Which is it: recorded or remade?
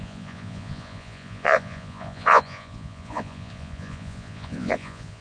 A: remade